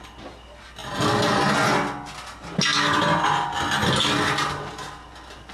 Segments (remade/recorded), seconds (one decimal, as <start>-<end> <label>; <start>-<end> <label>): 0.0-0.8 recorded; 0.8-1.4 remade; 1.4-5.5 recorded